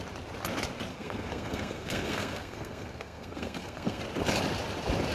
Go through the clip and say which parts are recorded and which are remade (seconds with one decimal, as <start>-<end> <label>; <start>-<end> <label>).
0.0-0.9 recorded; 0.9-4.0 remade; 4.0-5.1 recorded